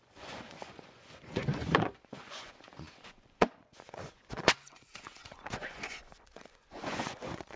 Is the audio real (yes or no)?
no